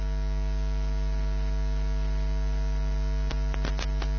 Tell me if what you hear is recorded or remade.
recorded